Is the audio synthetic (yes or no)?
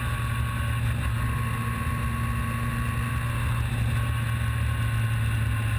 no